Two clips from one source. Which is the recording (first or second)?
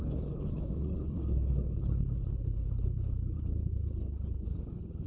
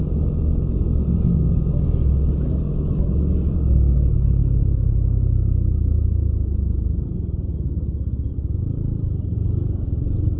second